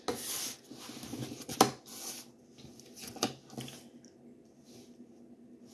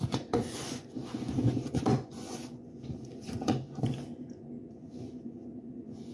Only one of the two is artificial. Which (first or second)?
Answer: second